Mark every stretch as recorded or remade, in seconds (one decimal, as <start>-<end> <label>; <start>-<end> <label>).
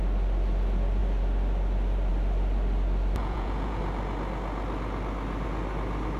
0.0-3.2 recorded; 3.2-3.8 remade; 3.8-6.2 recorded